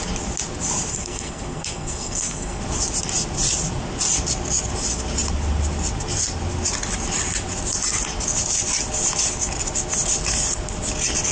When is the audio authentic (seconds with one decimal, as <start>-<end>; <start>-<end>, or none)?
0.0-0.9; 2.6-11.3

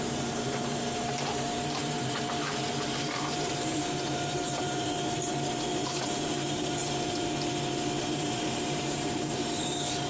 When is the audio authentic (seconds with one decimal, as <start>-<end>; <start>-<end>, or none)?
6.8-8.0

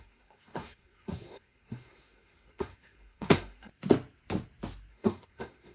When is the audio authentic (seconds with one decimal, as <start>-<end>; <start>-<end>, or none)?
3.7-4.9

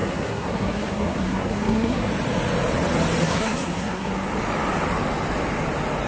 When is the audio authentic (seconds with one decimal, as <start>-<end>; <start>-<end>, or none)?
2.1-3.2; 4.1-6.1

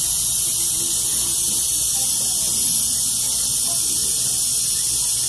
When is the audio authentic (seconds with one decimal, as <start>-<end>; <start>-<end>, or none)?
0.0-5.3

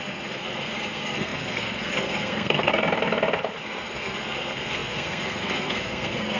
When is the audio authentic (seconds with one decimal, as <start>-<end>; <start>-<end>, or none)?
2.7-3.6

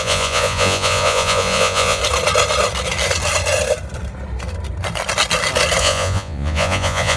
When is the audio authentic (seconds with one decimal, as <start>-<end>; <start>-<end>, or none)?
2.0-5.8